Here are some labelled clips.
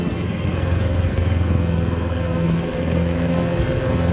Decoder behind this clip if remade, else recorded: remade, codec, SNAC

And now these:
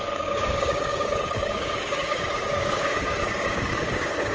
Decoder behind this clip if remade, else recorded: remade, codec, DAC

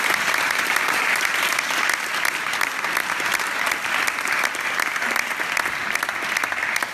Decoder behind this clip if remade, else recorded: recorded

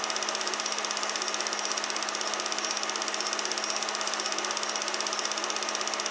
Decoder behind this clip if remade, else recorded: recorded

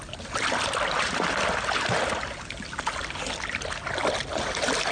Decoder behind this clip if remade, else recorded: recorded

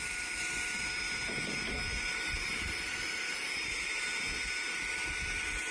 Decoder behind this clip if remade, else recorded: recorded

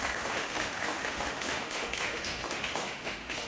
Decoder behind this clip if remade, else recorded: remade, autoencoder, DAC-VAE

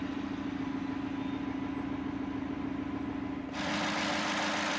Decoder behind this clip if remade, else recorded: recorded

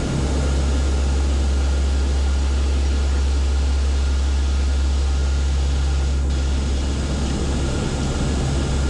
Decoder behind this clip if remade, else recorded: recorded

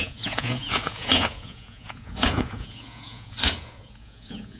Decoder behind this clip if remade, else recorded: remade, vocoder, Vocos